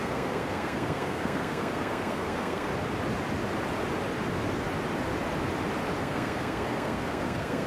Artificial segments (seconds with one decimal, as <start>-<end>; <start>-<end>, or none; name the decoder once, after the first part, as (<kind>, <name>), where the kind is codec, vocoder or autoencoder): 0.0-2.7 (codec, SNAC); 6.0-7.7